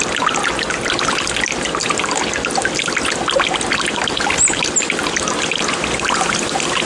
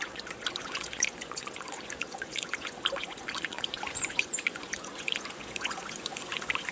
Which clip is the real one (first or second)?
first